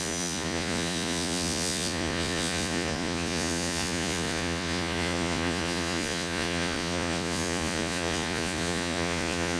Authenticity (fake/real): fake